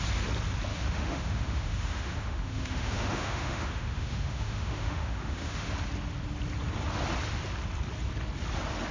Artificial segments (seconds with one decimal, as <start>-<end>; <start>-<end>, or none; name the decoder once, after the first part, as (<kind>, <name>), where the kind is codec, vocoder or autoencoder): 0.7-5.7 (autoencoder, DAC-VAE)